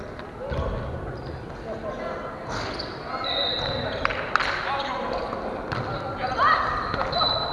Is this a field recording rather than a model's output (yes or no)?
yes